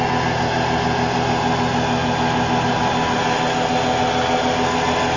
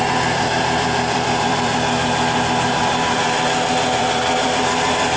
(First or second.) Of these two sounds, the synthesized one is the second